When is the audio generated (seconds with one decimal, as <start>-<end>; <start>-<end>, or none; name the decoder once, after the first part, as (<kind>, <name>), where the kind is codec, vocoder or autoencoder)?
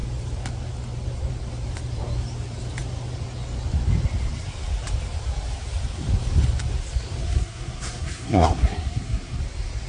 7.2-9.4 (codec, SNAC)